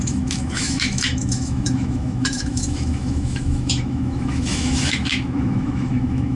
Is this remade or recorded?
remade